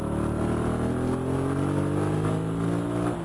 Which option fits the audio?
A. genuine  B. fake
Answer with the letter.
A